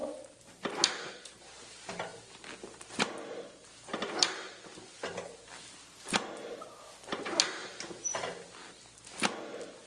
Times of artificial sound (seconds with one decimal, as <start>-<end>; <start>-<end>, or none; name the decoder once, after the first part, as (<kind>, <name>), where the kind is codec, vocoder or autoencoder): none